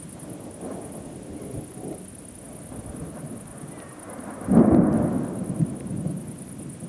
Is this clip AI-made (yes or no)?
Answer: no